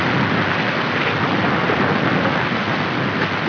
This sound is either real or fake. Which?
real